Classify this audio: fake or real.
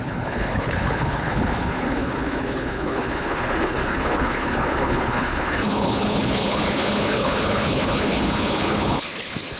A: fake